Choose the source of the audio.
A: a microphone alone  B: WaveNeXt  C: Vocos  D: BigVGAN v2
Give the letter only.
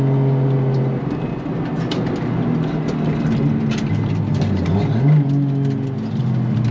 A